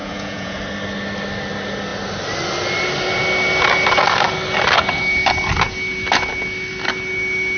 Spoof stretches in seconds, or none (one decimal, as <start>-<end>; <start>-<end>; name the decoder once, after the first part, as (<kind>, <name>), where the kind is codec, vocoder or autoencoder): 0.0-0.6 (vocoder, Vocos)